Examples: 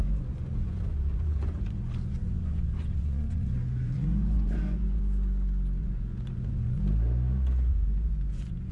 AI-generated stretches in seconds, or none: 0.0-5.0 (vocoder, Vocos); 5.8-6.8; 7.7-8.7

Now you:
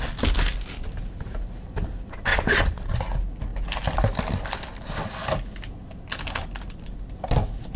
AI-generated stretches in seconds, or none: 2.3-3.0 (vocoder, Vocos)

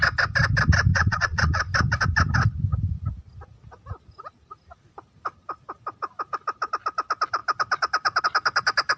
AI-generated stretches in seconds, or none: 0.9-1.6 (vocoder, Vocos)

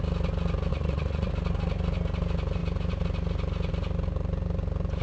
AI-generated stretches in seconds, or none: 0.7-1.3 (vocoder, Vocos)

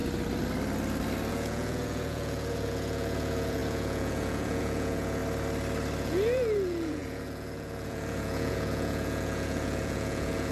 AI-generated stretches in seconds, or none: 1.3-5.2 (vocoder, Vocos); 6.0-10.5

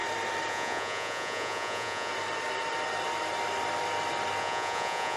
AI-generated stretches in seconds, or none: 0.5-2.1 (vocoder, Vocos); 4.4-5.2

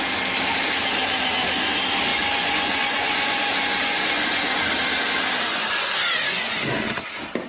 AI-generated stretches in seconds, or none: 2.1-4.6 (vocoder, Vocos); 5.5-7.1

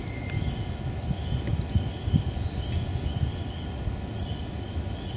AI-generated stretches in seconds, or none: none